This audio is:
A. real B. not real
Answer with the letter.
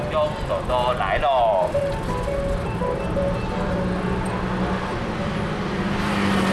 A